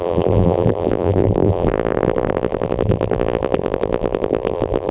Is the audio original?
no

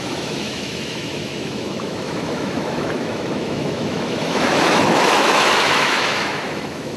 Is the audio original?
no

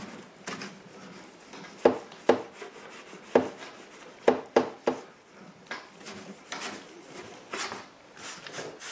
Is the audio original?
yes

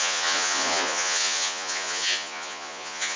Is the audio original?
no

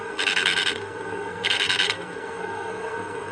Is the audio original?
no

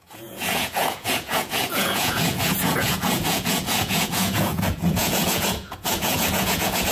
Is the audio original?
no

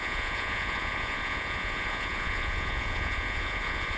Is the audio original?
no